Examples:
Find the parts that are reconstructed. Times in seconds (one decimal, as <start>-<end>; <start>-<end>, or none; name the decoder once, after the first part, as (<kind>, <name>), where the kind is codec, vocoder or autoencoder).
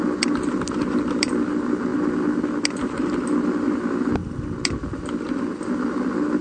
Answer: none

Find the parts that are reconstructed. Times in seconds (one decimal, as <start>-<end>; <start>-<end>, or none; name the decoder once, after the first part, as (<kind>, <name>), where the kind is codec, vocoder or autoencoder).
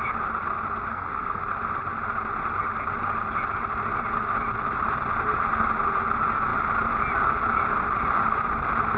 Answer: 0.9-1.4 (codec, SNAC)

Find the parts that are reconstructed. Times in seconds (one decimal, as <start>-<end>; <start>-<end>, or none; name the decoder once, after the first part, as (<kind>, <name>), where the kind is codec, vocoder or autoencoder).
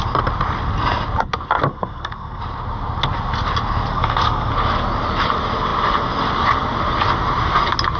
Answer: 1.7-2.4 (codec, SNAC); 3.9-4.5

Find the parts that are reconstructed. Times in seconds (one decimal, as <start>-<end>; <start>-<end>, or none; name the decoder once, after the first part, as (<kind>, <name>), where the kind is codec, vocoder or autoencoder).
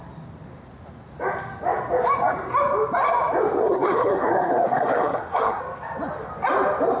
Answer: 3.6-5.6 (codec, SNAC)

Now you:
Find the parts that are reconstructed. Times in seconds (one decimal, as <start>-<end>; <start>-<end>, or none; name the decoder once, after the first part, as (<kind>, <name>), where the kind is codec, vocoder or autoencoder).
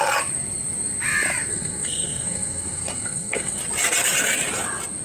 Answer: 1.5-3.6 (codec, SNAC)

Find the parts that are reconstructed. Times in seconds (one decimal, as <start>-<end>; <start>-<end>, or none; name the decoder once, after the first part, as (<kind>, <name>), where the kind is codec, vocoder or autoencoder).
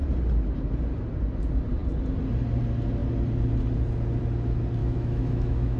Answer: 4.8-5.8 (autoencoder, DAC-VAE)